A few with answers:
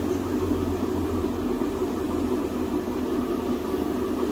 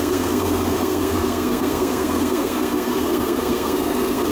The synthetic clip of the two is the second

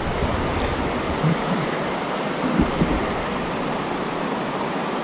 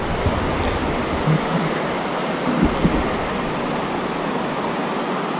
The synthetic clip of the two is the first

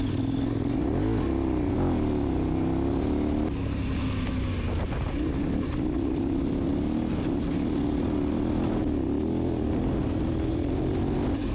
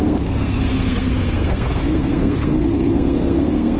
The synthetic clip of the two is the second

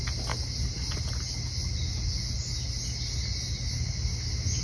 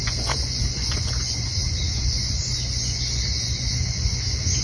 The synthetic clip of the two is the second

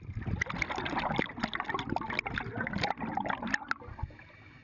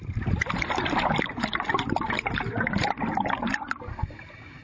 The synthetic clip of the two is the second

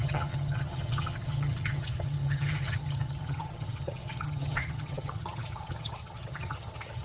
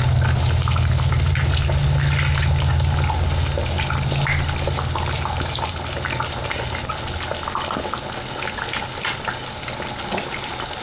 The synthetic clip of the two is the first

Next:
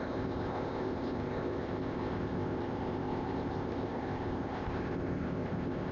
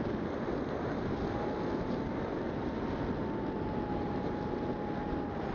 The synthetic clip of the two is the first